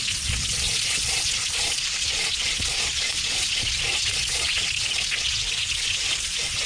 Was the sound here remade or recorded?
remade